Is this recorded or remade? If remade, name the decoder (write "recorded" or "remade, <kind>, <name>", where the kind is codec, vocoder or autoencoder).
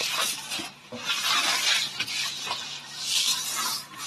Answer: recorded